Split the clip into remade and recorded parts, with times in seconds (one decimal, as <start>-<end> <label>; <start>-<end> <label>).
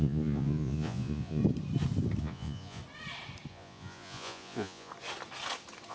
0.0-1.4 remade; 1.4-2.2 recorded; 2.2-2.8 remade; 2.8-3.5 recorded; 3.5-4.9 remade; 4.9-5.9 recorded